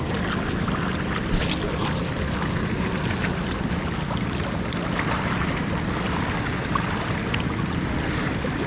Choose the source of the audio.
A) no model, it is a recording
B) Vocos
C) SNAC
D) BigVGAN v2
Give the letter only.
A